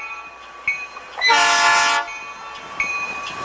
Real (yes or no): yes